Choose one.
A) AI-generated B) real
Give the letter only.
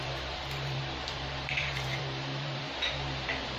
A